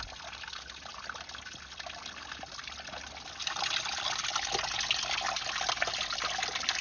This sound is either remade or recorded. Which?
recorded